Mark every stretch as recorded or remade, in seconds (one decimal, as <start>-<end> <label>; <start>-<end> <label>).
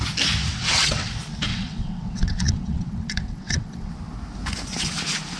0.0-0.5 recorded; 0.5-1.1 remade; 1.1-1.5 recorded; 1.5-3.9 remade; 3.9-5.4 recorded